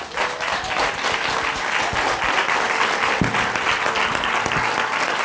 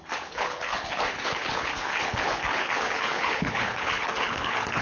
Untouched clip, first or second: first